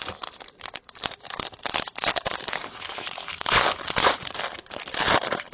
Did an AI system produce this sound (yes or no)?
yes